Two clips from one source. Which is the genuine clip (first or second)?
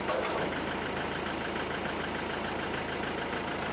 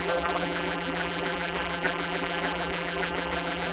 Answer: first